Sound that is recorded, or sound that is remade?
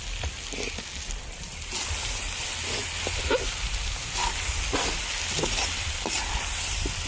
recorded